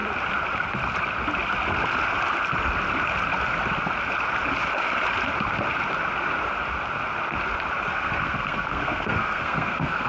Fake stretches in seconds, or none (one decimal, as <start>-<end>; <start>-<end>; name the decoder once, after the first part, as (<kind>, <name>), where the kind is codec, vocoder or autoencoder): 7.9-10.1 (codec, SNAC)